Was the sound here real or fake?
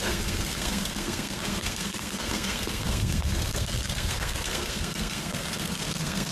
fake